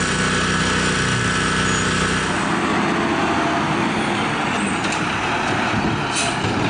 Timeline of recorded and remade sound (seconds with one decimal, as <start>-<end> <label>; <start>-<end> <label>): 0.0-6.7 recorded